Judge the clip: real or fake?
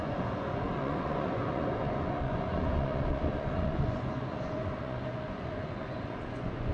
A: fake